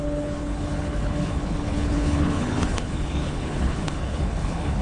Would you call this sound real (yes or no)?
no